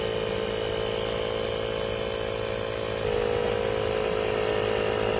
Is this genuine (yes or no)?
yes